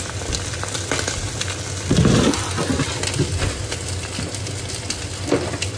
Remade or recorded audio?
recorded